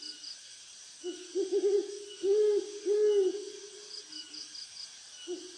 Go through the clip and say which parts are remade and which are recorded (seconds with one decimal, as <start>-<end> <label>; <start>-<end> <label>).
0.0-5.6 recorded